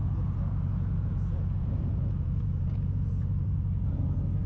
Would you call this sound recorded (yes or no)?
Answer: no